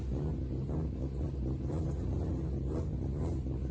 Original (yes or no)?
yes